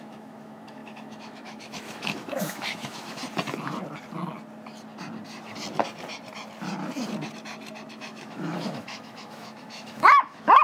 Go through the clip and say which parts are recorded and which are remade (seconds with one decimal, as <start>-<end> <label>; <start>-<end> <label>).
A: 0.0-3.2 remade; 3.2-7.9 recorded; 7.9-10.6 remade